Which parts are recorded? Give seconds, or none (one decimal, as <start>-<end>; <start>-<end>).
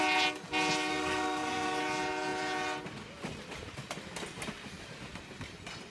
0.0-0.9; 1.8-5.9